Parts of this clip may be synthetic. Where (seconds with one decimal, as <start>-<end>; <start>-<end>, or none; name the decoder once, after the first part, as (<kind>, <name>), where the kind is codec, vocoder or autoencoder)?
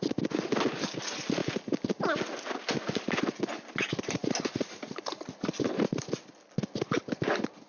none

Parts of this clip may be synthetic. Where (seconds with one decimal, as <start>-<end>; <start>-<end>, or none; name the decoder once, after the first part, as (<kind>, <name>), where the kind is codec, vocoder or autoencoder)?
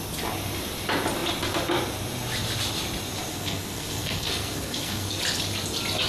3.3-5.2 (codec, SNAC)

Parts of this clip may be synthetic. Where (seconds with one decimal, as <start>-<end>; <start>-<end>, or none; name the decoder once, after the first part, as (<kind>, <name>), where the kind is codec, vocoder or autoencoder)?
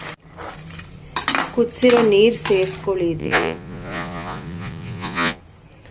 3.2-5.4 (vocoder, Vocos)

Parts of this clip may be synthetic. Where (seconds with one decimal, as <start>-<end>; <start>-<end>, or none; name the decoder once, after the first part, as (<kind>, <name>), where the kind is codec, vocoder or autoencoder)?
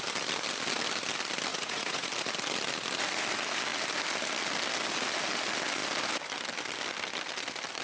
1.5-2.1 (vocoder, Vocos)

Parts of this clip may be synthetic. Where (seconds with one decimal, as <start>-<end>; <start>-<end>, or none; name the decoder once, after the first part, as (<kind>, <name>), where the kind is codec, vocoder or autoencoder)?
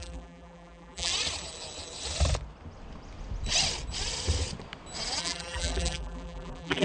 0.0-1.1 (vocoder, BigVGAN v2); 5.2-6.8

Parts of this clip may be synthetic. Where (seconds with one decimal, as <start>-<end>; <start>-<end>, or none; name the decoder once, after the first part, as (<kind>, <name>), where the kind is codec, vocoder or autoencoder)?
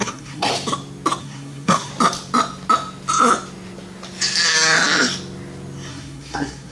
0.0-0.5 (codec, SNAC); 1.2-1.9; 5.9-6.7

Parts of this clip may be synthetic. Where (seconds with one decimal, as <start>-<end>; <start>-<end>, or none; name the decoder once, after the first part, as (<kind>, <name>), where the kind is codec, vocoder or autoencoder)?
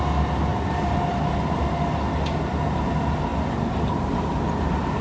0.5-1.3 (vocoder, BigVGAN v2)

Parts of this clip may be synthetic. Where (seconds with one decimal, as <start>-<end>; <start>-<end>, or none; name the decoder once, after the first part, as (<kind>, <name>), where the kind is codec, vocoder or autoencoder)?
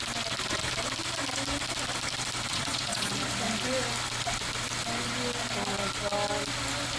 2.5-3.1 (vocoder, Vocos)